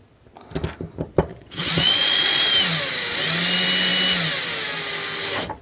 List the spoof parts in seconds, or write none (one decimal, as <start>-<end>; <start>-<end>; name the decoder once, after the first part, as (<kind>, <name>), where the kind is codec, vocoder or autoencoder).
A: 1.3-2.4 (vocoder, Vocos)